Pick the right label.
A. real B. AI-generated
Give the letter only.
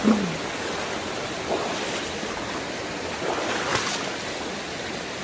A